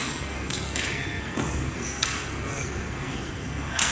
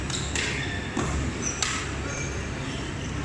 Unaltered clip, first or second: second